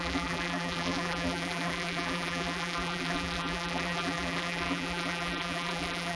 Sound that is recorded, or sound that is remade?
remade